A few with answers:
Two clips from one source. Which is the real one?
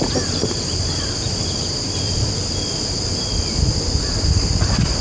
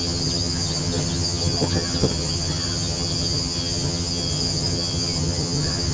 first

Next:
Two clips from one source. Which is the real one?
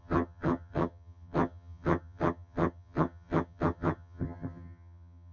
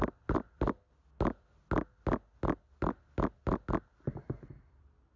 second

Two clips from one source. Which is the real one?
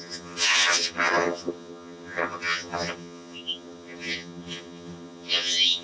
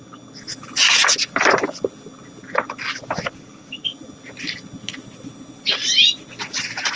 second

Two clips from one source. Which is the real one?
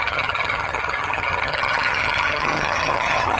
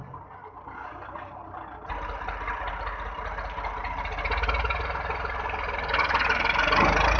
second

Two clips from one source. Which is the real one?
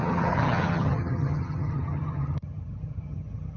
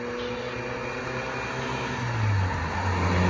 second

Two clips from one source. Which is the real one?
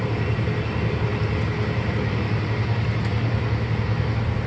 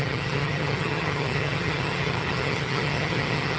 first